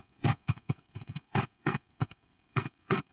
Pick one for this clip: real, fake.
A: fake